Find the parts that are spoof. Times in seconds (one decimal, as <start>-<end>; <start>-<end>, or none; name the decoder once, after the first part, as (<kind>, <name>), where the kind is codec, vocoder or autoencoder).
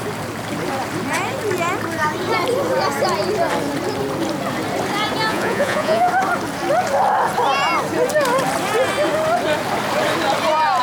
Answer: 5.3-6.1 (vocoder, Vocos)